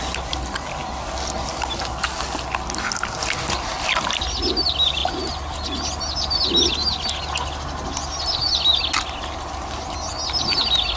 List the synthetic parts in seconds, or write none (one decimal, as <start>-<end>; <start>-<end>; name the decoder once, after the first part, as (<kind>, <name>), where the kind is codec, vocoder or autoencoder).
5.0-5.5 (vocoder, BigVGAN v2)